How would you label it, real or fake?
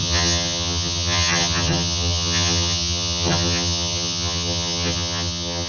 fake